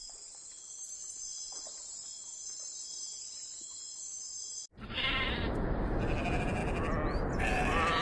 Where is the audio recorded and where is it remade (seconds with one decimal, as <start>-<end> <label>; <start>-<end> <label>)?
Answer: 0.0-8.0 recorded